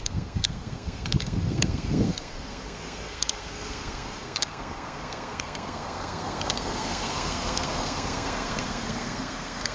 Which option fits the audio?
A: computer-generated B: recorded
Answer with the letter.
A